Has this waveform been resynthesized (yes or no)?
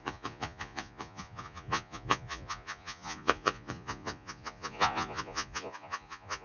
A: yes